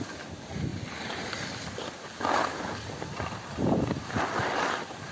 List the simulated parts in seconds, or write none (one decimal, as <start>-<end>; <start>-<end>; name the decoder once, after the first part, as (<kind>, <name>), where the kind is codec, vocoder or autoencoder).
none